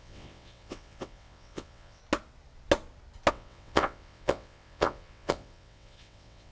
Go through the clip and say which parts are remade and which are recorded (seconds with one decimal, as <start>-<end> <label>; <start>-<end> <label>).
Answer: 0.0-2.0 remade; 2.0-3.3 recorded; 3.3-6.5 remade